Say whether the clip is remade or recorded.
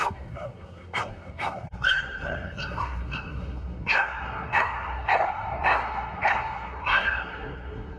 remade